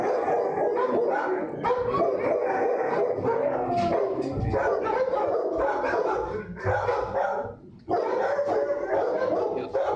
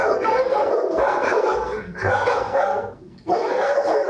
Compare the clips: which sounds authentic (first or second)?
first